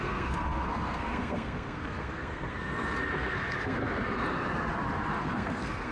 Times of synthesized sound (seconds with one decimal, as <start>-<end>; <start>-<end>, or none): 0.0-3.8; 5.2-5.9